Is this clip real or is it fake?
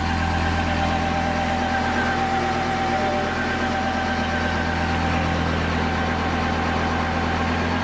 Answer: real